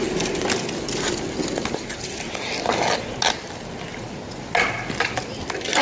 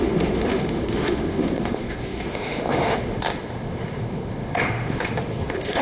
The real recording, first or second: first